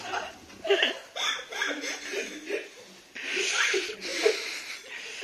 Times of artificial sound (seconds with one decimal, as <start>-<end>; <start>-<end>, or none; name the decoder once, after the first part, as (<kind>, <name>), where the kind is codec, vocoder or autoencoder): none